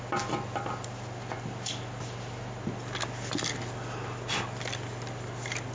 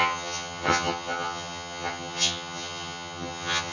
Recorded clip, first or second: first